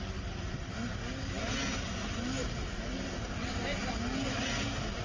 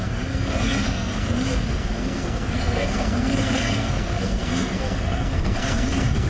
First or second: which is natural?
first